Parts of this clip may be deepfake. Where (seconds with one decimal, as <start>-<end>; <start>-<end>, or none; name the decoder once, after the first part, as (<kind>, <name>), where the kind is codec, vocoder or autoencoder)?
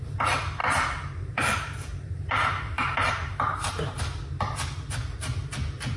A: 0.6-4.0 (vocoder, BigVGAN v2)